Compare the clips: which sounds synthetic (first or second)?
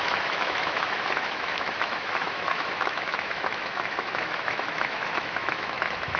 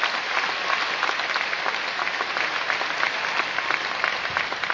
first